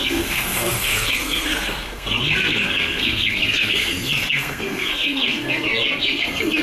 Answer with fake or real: fake